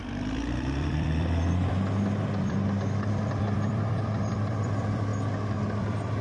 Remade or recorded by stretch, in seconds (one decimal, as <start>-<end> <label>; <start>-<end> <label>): 0.0-5.1 remade; 5.1-5.8 recorded; 5.8-6.2 remade